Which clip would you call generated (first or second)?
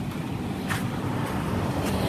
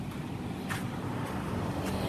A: first